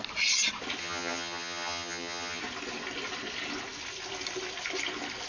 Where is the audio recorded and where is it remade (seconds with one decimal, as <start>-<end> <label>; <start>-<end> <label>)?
0.0-0.8 recorded; 0.8-2.4 remade; 2.4-5.3 recorded